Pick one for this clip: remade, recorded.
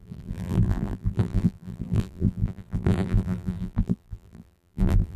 remade